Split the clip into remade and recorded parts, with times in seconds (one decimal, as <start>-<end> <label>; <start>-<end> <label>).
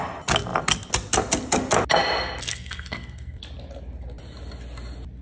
0.0-2.5 recorded; 2.5-3.4 remade; 3.4-5.2 recorded